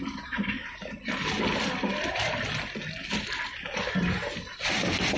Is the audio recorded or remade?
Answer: recorded